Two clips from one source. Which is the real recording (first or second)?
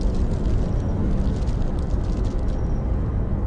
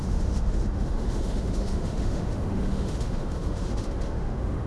first